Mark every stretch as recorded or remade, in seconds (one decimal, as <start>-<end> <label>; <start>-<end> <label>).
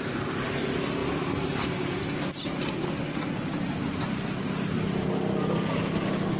0.0-1.0 recorded; 1.0-1.7 remade; 1.7-6.4 recorded